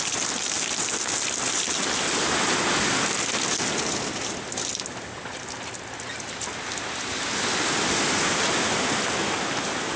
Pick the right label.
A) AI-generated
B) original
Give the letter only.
B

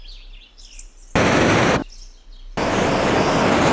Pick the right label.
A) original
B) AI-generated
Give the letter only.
A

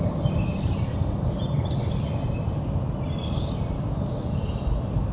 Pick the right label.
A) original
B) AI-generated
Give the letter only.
A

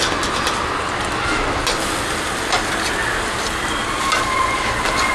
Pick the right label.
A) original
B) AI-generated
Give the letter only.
A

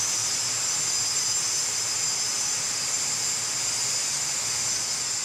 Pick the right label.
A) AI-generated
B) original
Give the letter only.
A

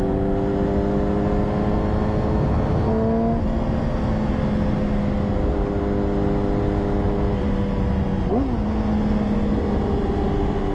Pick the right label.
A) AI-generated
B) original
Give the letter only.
B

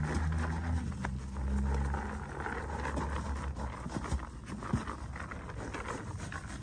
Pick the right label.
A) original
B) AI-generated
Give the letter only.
A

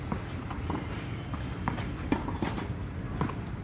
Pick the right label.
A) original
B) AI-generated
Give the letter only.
A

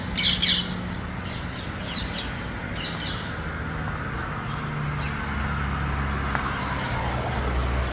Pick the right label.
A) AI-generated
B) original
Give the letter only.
B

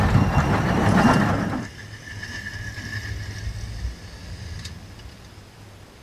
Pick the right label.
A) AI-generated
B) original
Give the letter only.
B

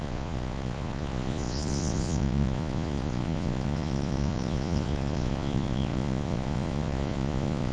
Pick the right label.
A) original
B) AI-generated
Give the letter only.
B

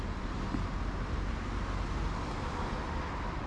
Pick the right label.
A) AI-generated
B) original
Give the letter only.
B